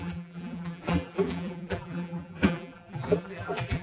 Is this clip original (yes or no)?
no